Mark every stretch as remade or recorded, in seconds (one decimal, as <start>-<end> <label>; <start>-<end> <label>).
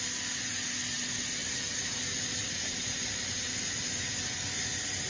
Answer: 0.0-1.4 recorded; 1.4-3.8 remade; 3.8-5.1 recorded